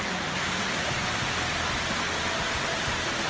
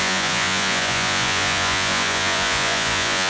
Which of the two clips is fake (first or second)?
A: second